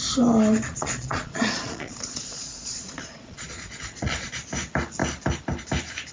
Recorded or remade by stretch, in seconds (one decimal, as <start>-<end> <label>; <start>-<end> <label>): 0.0-0.7 recorded; 0.7-4.4 remade; 4.4-6.1 recorded